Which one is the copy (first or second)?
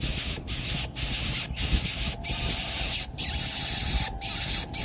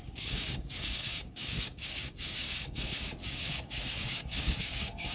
second